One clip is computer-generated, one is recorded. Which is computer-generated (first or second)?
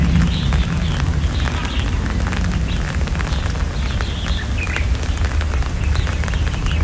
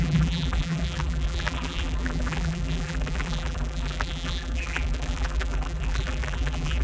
second